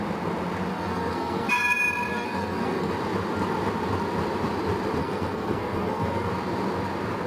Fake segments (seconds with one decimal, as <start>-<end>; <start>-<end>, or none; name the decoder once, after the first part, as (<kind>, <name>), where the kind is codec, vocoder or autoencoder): 0.7-1.5 (codec, SNAC); 2.1-2.9; 5.0-6.3